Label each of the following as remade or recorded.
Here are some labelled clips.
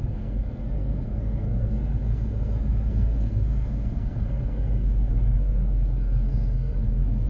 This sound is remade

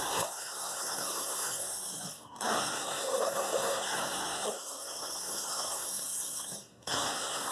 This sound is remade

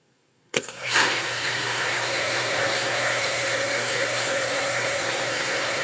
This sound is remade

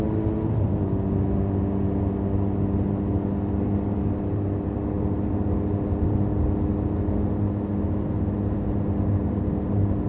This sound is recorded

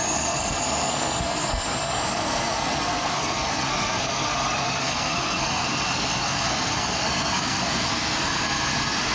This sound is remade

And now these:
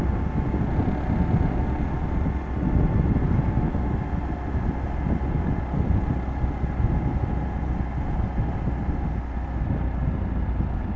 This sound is recorded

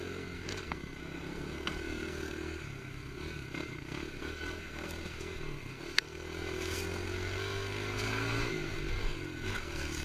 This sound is remade